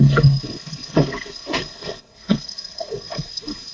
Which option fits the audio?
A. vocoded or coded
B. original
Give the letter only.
A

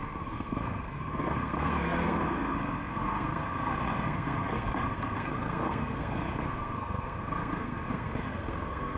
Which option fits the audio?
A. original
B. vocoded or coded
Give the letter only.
B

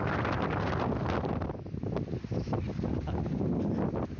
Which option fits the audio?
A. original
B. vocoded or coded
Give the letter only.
A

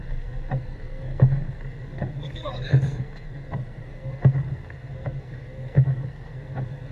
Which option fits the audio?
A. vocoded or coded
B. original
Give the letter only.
A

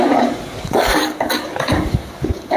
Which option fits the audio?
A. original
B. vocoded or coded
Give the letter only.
B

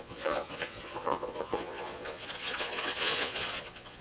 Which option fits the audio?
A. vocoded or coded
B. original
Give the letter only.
A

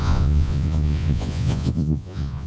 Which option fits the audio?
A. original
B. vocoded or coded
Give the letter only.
B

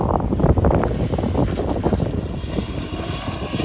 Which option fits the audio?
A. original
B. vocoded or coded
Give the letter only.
A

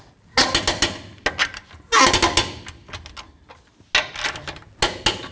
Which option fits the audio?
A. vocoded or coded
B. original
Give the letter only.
B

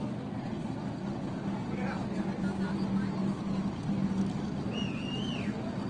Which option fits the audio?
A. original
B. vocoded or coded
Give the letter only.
A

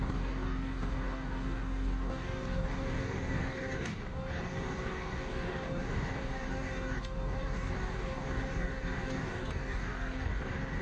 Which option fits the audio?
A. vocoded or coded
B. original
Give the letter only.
A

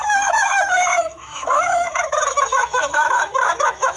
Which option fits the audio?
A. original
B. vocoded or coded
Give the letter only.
B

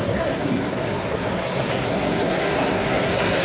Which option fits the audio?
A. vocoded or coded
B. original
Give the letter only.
A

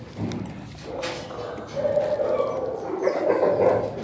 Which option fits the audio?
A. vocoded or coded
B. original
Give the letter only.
B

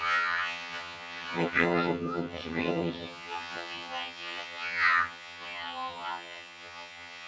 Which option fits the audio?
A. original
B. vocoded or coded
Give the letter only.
B